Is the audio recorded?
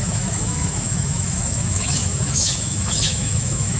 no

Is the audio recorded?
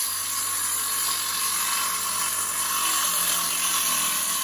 yes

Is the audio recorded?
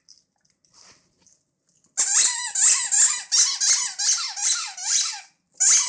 yes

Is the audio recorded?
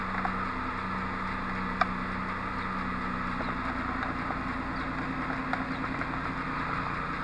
yes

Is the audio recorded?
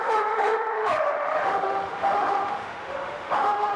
no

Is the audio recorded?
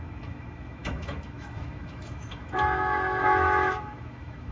no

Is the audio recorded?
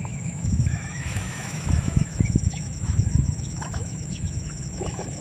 no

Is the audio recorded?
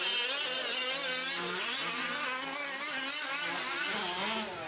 yes